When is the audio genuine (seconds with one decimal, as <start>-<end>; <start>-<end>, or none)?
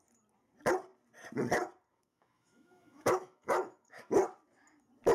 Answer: 0.0-1.9; 4.1-5.1